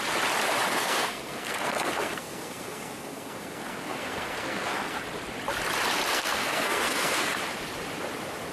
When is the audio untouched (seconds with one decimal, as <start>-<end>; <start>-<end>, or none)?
0.0-0.7; 5.0-6.1; 7.4-8.5